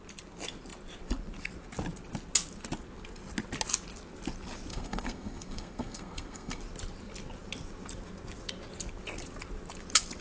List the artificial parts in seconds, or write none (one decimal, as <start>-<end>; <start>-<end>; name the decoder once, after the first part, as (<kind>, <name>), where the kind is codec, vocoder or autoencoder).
4.7-6.6 (codec, SNAC)